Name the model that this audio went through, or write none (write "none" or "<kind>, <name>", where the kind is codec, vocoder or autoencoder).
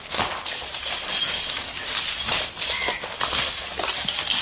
none